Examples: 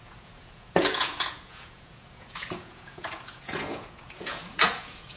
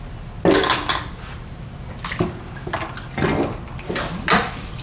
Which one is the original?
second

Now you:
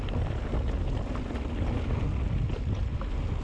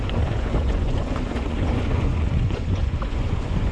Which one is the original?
first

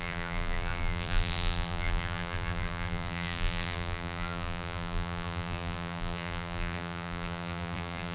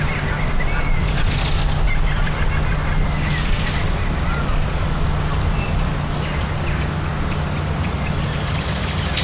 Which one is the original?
second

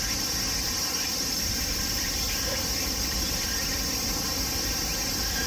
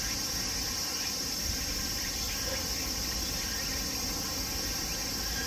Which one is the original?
second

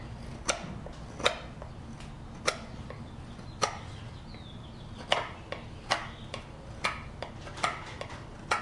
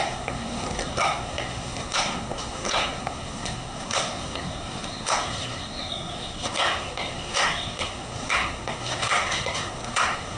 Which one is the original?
first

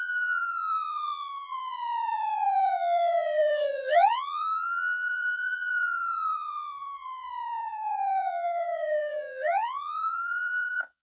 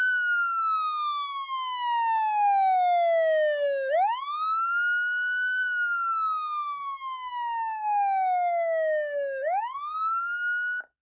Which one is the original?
second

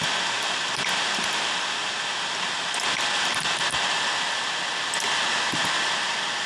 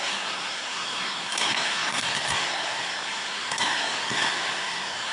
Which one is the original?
first